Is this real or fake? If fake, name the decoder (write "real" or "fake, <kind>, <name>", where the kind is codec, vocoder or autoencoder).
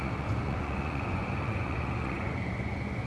fake, vocoder, Vocos